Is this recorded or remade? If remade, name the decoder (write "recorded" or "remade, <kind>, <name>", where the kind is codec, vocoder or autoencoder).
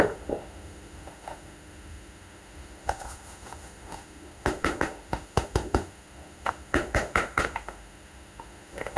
remade, autoencoder, DAC-VAE